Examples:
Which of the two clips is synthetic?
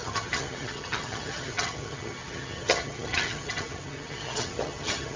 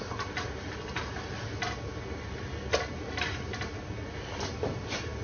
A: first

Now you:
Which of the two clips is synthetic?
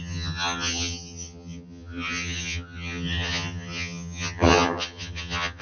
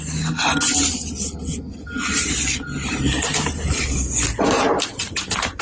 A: first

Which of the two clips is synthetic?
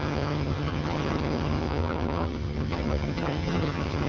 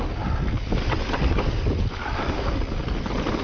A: first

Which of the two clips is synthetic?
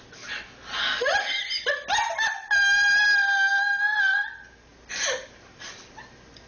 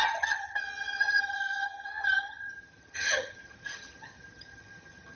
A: second